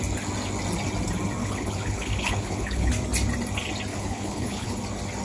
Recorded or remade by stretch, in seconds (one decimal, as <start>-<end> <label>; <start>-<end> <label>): 0.0-1.4 recorded; 1.4-2.9 remade; 2.9-3.9 recorded; 3.9-4.8 remade; 4.8-5.2 recorded